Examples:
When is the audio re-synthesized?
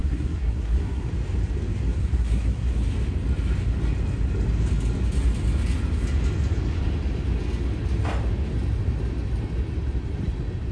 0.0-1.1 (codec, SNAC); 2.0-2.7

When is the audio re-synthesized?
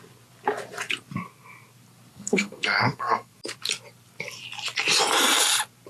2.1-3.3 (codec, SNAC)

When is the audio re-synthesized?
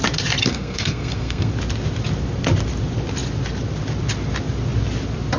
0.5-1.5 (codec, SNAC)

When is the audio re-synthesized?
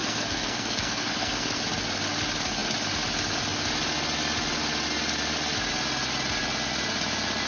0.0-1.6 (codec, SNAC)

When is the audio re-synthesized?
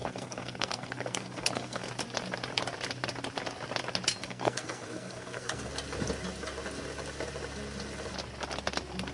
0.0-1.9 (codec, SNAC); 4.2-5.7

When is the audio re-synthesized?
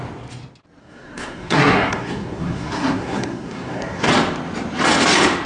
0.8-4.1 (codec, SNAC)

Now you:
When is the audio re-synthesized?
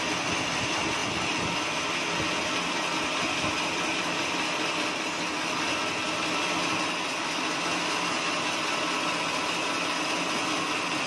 none